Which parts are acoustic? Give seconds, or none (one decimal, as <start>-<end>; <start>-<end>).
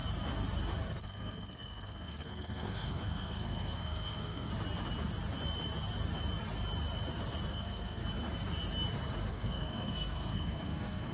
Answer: 0.0-1.0; 4.5-7.5; 8.0-9.3